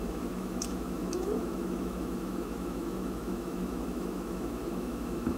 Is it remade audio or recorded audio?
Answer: remade